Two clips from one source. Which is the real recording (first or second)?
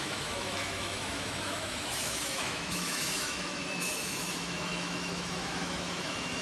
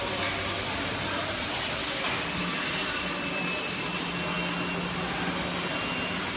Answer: second